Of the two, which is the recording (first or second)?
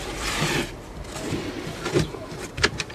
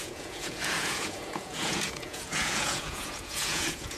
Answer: first